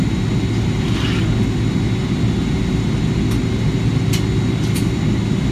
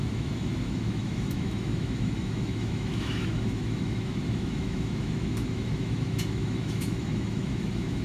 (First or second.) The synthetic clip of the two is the second